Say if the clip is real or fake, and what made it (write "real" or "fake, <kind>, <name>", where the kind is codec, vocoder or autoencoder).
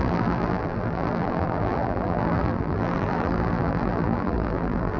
fake, vocoder, BigVGAN v2